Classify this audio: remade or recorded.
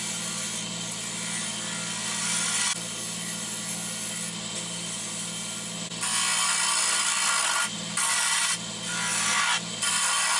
recorded